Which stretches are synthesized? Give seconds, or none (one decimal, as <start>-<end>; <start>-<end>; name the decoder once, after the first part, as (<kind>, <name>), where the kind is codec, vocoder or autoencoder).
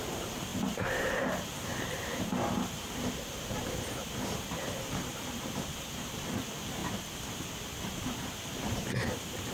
0.0-6.8 (vocoder, BigVGAN v2); 8.0-9.5